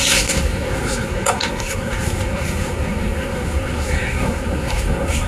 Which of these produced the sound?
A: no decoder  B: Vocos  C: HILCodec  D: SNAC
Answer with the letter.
D